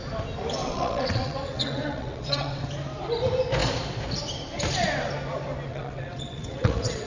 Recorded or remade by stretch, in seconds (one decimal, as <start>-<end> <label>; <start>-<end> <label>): 0.0-0.6 recorded; 0.6-2.6 remade; 2.6-5.7 recorded; 5.7-7.1 remade